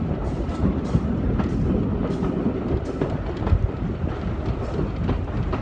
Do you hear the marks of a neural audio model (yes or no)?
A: no